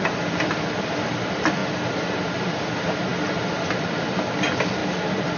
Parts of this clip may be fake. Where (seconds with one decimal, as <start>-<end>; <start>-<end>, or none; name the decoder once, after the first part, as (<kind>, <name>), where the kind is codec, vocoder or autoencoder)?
1.6-2.7 (vocoder, BigVGAN v2)